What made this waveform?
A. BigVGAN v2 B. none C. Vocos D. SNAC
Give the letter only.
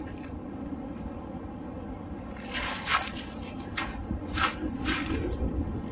B